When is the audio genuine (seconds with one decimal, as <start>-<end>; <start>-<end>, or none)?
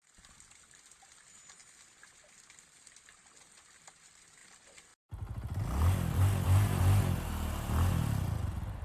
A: 0.0-8.8